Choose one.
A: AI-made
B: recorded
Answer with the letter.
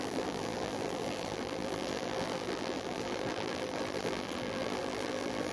A